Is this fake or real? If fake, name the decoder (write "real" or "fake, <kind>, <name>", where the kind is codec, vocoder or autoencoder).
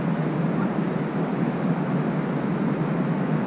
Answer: real